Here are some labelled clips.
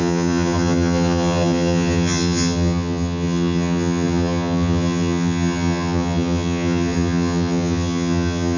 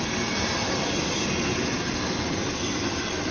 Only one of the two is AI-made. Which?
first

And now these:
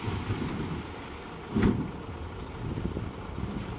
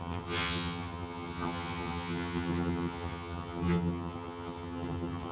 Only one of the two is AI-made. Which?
second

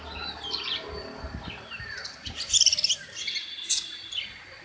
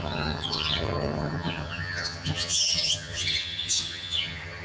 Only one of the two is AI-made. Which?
second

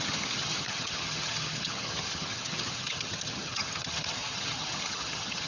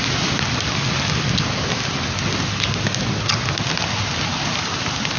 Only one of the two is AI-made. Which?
first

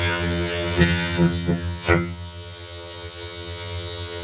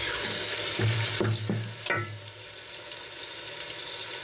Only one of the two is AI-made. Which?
first